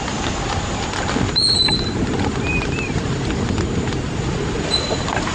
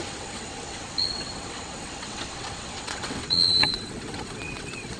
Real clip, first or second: first